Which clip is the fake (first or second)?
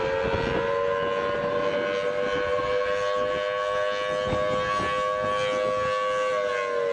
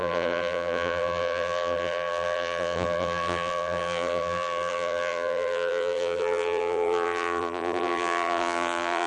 second